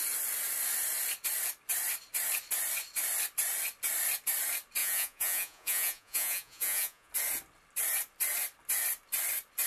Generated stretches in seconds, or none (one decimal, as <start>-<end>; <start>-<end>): 4.8-7.1